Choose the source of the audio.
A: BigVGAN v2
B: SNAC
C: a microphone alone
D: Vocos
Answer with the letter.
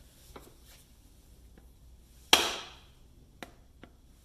C